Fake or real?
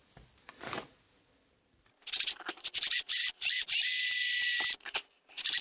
real